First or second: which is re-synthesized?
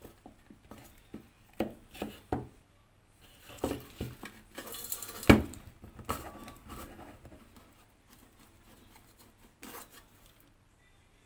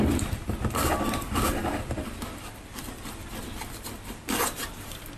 second